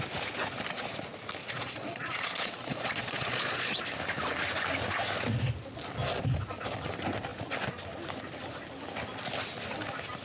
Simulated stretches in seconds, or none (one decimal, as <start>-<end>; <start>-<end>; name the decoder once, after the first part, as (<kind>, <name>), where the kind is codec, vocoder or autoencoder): 1.4-3.8 (vocoder, Vocos)